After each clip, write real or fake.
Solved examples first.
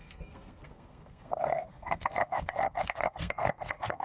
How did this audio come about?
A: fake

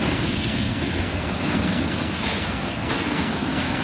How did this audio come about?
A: fake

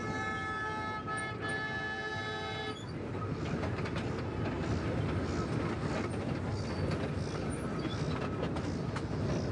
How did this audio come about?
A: real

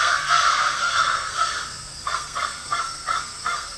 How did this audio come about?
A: fake